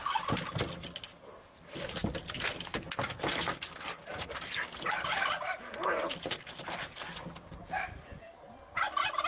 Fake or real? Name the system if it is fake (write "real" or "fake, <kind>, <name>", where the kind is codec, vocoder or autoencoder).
real